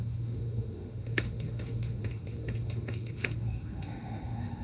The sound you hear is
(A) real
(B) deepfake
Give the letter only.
B